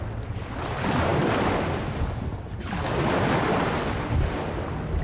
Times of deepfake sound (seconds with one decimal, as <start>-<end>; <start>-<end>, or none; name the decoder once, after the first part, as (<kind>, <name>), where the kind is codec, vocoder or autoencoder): none